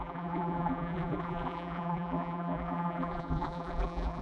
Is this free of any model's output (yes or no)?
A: no